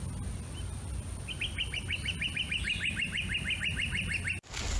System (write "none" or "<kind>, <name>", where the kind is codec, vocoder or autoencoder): none